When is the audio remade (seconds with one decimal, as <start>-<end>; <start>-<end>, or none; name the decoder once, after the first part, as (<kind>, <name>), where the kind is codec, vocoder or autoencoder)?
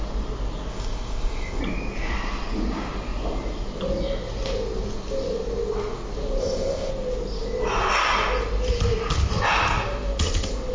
0.7-1.6 (codec, ZipCodec); 6.4-6.9